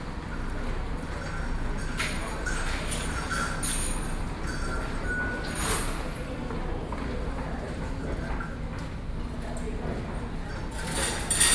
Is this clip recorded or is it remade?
recorded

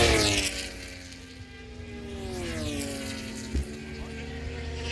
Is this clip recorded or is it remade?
recorded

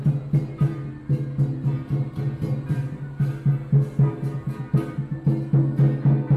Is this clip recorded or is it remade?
recorded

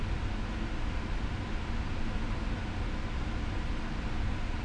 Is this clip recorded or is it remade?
recorded